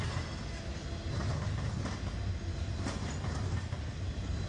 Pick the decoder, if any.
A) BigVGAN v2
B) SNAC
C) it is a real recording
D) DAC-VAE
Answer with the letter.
C